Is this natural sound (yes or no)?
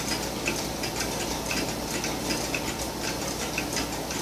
yes